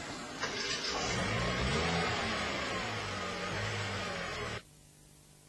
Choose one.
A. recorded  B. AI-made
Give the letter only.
A